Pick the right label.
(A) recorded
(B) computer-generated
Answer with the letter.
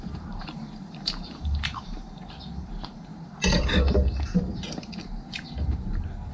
B